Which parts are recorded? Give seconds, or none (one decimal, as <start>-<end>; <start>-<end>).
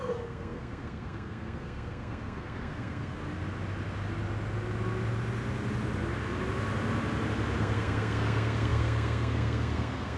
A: 3.2-7.6